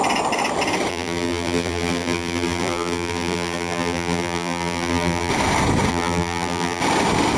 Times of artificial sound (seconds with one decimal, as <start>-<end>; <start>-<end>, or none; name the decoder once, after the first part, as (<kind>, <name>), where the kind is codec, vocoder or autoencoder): 0.9-5.3 (vocoder, BigVGAN v2); 5.9-6.8